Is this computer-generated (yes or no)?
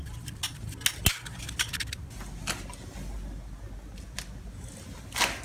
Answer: no